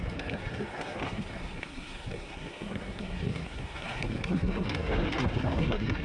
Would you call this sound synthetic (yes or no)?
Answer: yes